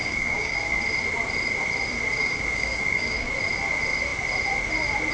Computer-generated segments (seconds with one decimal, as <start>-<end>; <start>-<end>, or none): 0.0-0.8; 2.2-3.3